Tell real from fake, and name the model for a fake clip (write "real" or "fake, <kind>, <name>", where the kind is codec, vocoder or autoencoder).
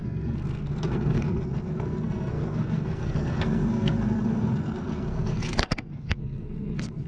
fake, codec, SNAC